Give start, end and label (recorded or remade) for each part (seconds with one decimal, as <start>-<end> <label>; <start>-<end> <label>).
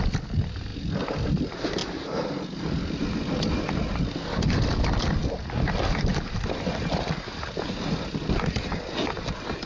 0.0-9.7 recorded